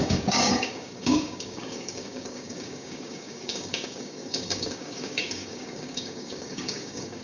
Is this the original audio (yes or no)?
no